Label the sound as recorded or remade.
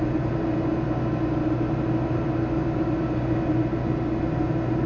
recorded